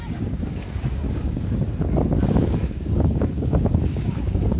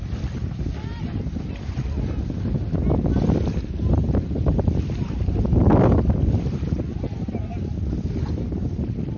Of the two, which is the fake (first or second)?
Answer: first